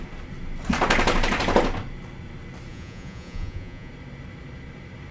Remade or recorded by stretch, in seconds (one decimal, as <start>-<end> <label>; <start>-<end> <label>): 0.0-2.7 recorded; 2.7-3.9 remade; 3.9-5.1 recorded